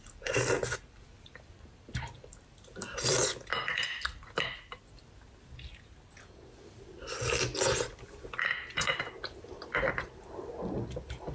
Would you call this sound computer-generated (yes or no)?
no